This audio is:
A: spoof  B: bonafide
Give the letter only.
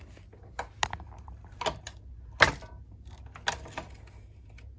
B